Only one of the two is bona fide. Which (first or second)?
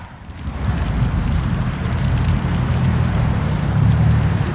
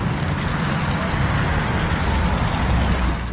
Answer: second